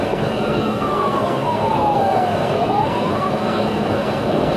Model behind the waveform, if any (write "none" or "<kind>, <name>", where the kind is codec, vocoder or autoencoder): codec, SNAC